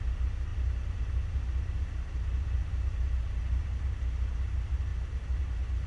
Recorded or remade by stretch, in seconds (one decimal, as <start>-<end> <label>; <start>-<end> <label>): 0.0-5.9 recorded